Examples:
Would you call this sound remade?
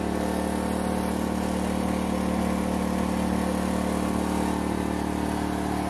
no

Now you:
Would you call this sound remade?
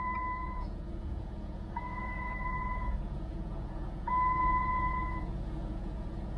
yes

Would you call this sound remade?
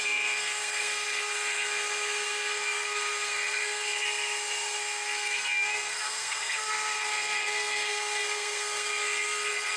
yes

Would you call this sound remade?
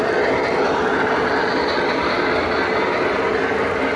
no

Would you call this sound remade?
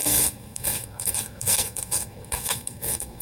yes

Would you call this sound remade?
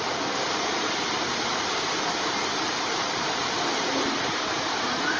yes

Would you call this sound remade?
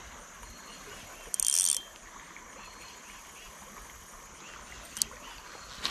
no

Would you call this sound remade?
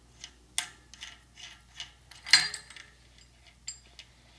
no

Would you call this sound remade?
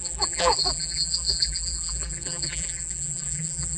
yes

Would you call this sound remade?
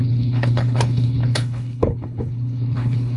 yes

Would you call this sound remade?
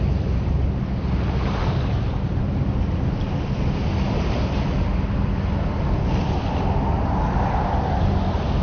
no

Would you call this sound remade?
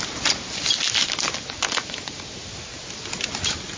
no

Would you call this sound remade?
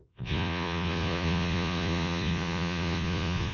yes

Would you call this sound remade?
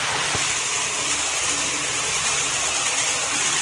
no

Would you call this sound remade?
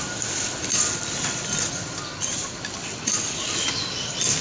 no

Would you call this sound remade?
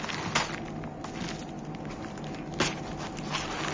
no